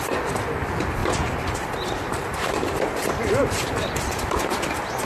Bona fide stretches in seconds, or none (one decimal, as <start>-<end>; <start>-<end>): 0.0-1.0; 4.0-5.0